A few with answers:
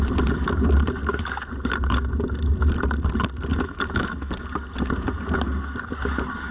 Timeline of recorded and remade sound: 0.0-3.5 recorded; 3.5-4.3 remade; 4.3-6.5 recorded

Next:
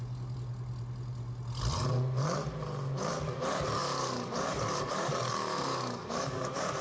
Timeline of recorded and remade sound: 0.0-3.8 recorded; 3.8-6.8 remade